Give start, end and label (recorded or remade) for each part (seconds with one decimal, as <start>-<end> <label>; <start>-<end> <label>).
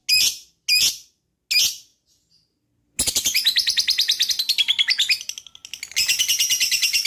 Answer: 0.0-7.1 recorded